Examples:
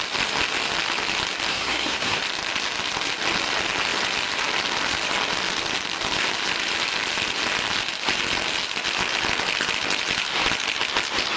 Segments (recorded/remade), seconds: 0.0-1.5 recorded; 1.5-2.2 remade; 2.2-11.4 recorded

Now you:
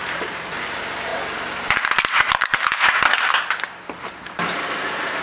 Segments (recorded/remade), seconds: 0.0-1.1 remade; 1.1-4.2 recorded; 4.2-5.2 remade